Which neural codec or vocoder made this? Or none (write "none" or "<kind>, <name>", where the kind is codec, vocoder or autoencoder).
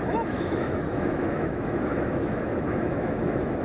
autoencoder, DAC-VAE